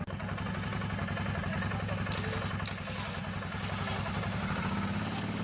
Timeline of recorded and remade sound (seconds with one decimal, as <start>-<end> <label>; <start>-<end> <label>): 0.0-5.4 recorded